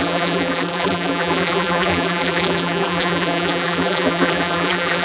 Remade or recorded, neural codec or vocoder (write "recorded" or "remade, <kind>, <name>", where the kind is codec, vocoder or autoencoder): remade, vocoder, BigVGAN v2